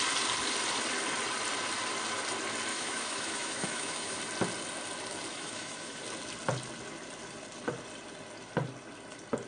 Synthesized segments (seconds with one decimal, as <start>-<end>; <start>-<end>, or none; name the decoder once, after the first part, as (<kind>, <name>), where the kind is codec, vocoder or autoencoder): 2.7-4.2 (autoencoder, DAC-VAE); 5.3-6.0